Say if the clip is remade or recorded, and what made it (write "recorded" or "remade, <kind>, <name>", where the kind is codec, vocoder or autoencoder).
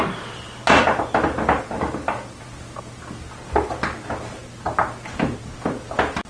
recorded